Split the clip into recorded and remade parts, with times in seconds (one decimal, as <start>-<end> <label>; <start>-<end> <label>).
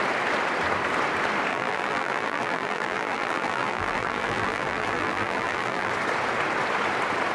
0.0-1.5 recorded; 1.5-5.9 remade; 5.9-7.3 recorded